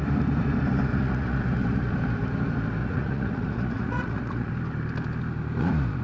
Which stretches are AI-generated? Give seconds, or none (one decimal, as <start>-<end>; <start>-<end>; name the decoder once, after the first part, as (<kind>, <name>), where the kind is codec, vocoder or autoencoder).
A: 0.9-1.4 (vocoder, Vocos); 2.8-4.5

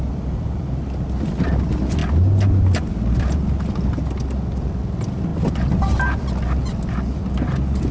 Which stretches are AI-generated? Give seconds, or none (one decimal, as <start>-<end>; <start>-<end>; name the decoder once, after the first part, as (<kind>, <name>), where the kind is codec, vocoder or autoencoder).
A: none

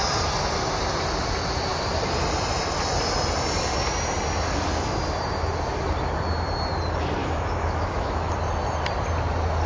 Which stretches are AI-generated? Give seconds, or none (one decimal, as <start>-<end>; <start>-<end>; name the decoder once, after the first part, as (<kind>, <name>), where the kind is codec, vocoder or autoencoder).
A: 7.2-8.3 (autoencoder, DAC-VAE)

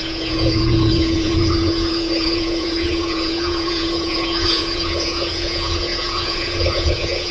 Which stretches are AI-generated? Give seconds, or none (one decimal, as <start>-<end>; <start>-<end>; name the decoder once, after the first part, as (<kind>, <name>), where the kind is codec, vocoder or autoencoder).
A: 0.0-7.3 (vocoder, Vocos)

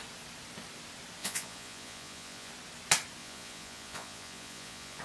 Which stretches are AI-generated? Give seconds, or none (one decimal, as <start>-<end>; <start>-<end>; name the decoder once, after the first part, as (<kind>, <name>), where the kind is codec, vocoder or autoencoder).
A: 1.2-2.5 (vocoder, Vocos); 3.2-5.0

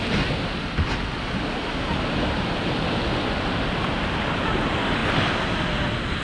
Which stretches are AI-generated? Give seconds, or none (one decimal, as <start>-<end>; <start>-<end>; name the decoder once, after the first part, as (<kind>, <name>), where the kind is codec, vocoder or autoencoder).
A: none

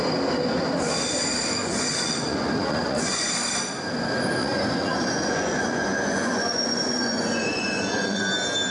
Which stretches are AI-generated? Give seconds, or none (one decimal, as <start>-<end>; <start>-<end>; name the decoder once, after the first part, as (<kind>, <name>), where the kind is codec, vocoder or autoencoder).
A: 1.6-3.3 (vocoder, Vocos); 4.4-8.2

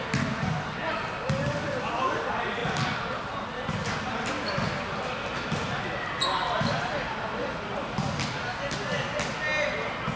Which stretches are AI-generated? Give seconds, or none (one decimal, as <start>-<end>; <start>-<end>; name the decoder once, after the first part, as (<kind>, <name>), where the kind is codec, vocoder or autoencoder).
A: none